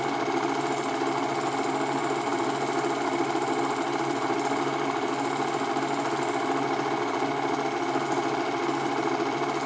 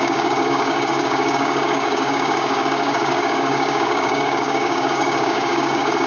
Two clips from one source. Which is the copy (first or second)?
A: second